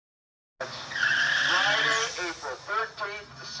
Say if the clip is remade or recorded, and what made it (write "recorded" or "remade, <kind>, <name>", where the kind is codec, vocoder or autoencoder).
recorded